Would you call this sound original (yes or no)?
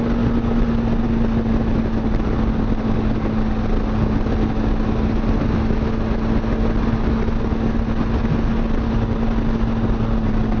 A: yes